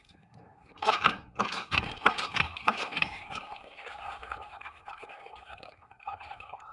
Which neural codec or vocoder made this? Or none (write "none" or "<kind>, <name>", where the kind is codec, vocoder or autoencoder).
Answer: codec, SNAC